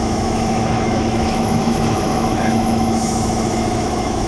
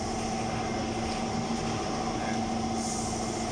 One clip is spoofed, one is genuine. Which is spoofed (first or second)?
first